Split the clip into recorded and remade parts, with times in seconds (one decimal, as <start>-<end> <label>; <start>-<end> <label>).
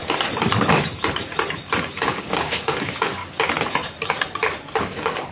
0.0-2.0 recorded; 2.0-3.2 remade; 3.2-4.8 recorded; 4.8-5.3 remade